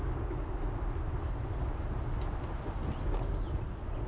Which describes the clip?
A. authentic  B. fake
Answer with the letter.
A